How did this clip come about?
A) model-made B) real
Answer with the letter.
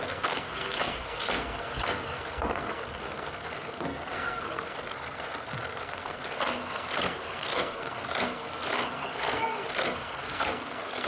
A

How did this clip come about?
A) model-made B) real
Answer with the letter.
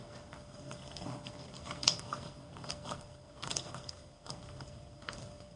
A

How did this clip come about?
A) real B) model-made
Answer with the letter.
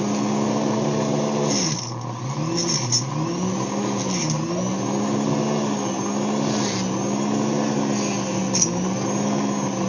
A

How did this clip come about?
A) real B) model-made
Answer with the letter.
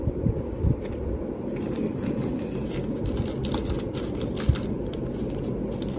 A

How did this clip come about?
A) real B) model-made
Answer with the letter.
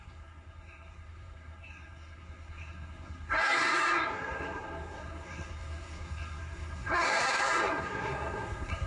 B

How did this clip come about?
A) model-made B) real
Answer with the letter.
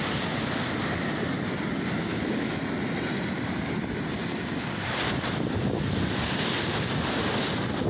B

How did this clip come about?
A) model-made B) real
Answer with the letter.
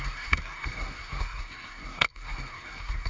A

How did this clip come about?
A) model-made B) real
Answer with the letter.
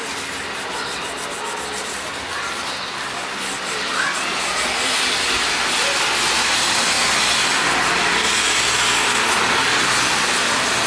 B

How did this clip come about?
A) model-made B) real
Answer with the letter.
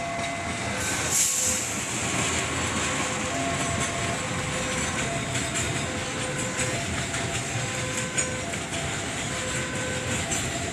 B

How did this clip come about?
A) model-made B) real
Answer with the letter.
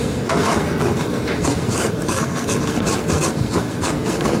A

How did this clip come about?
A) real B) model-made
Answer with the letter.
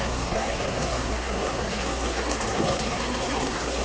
B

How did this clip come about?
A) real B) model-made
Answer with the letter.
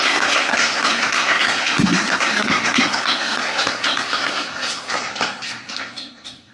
B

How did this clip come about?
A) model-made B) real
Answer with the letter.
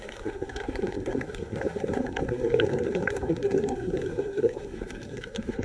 A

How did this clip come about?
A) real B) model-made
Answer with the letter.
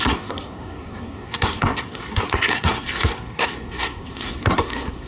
B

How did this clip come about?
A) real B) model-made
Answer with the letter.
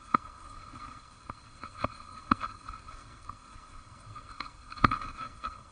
B